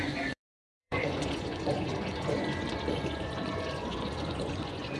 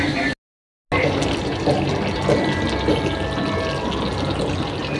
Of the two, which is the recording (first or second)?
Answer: second